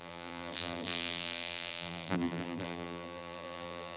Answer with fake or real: fake